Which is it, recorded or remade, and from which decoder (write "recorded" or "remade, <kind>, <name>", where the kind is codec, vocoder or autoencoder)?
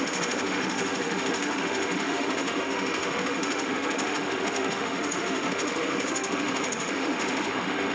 remade, autoencoder, DAC-VAE